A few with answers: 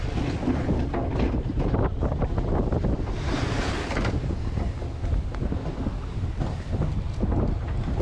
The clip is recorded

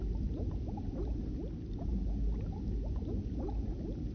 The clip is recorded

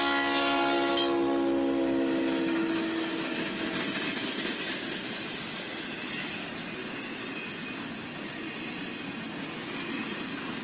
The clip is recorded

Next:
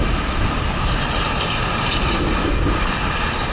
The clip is recorded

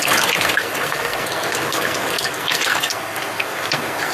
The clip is remade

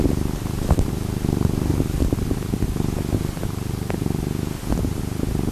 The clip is recorded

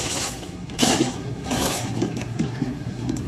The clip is remade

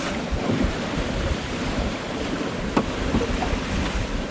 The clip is recorded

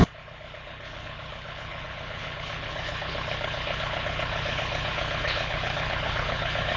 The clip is remade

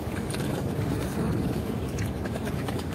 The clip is remade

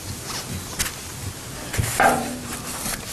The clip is recorded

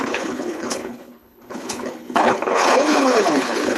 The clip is remade